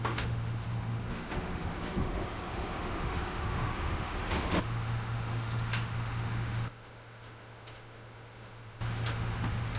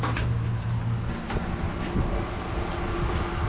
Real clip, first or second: second